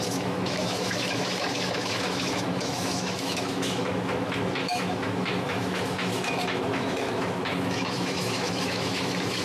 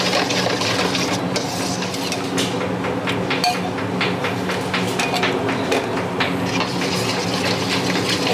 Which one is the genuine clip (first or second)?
second